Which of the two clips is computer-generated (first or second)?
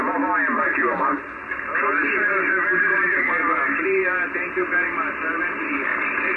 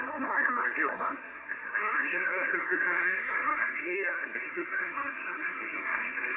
second